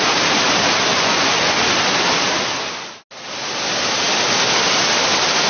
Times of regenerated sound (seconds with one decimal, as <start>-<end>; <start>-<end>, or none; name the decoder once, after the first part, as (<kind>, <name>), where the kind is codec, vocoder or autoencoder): 0.9-1.6 (vocoder, Vocos)